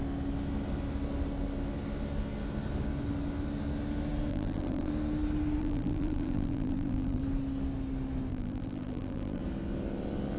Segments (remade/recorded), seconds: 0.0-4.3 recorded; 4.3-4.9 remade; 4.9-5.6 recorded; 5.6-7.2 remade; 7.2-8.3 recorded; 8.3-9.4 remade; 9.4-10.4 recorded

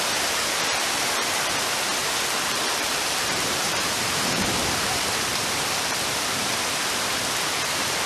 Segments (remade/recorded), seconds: 0.0-2.0 recorded; 2.0-6.5 remade; 6.5-8.1 recorded

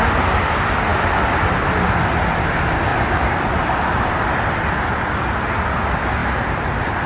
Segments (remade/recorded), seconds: 0.0-2.9 recorded; 2.9-4.1 remade; 4.1-6.2 recorded; 6.2-7.1 remade

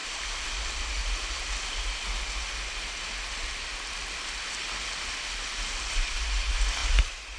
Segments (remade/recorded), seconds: 0.0-6.8 recorded; 6.8-7.4 remade

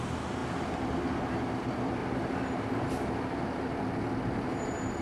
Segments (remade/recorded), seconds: 0.0-2.0 recorded; 2.0-2.7 remade; 2.7-5.0 recorded

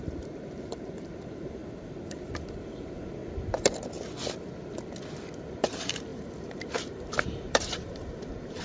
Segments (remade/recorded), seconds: 0.0-1.6 remade; 1.6-2.4 recorded; 2.4-3.2 remade; 3.2-5.5 recorded; 5.5-8.6 remade

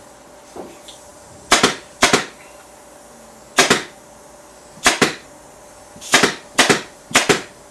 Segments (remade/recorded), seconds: 0.0-7.7 recorded

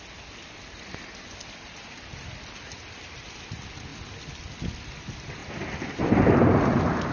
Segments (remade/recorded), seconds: 0.0-3.9 recorded; 3.9-4.5 remade; 4.5-5.4 recorded; 5.4-5.9 remade; 5.9-7.1 recorded